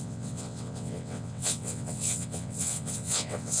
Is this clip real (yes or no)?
no